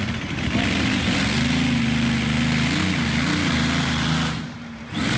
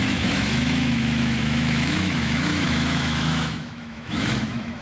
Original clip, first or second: first